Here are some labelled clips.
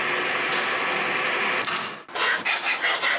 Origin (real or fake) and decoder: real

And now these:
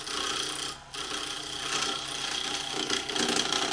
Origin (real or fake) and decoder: real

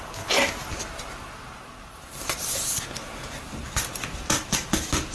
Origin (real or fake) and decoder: real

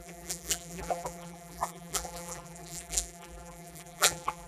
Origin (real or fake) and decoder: fake, vocoder, BigVGAN v2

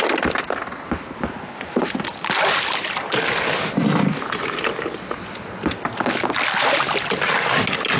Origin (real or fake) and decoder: real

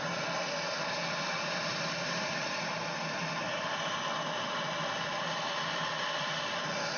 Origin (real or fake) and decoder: real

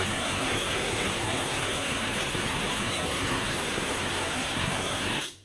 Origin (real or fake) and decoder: fake, codec, SNAC